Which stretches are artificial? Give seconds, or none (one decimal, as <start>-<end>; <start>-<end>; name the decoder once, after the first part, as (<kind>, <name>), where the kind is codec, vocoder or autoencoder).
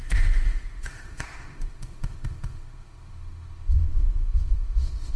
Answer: 0.0-5.2 (autoencoder, DAC-VAE)